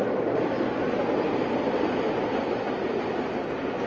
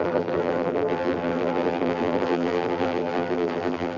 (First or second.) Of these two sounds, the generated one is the second